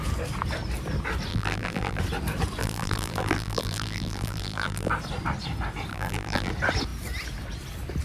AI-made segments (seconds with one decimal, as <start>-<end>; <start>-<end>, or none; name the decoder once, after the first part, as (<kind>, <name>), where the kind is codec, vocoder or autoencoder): 1.3-2.0 (vocoder, BigVGAN v2); 2.6-4.9; 5.9-6.5